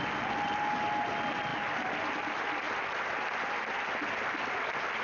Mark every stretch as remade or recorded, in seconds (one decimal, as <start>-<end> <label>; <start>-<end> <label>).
0.0-5.0 recorded